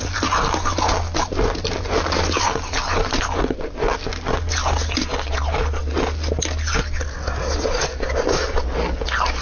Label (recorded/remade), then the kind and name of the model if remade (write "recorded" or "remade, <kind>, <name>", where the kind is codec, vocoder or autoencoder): recorded